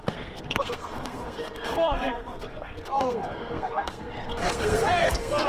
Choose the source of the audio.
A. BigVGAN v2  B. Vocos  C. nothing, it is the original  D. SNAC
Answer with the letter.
D